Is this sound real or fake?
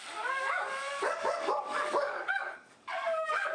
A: fake